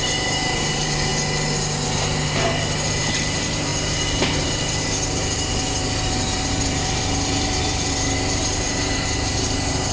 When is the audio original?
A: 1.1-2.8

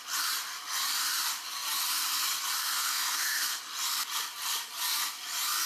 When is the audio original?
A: 0.0-2.6; 3.6-5.7

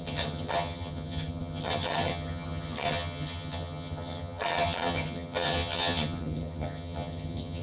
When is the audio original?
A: none

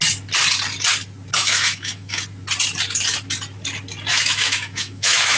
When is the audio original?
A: 0.0-1.4; 2.2-4.1

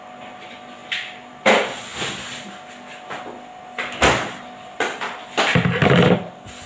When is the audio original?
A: 0.0-6.7

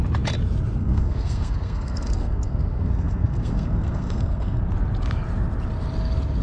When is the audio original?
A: 0.0-0.8; 4.6-6.4

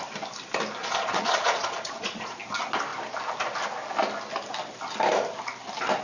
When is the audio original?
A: 0.0-0.8; 2.4-6.0

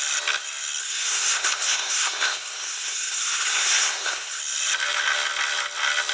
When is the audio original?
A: 0.0-0.8; 4.4-6.1